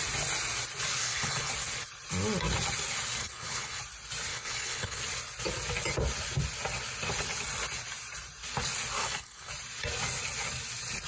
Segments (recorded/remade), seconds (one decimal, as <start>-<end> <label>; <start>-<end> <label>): 0.0-1.0 recorded; 1.0-1.5 remade; 1.5-3.2 recorded; 3.2-3.8 remade; 3.8-4.3 recorded; 4.3-5.0 remade; 5.0-9.0 recorded; 9.0-9.5 remade; 9.5-11.1 recorded